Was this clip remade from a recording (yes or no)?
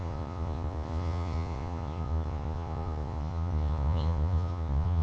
yes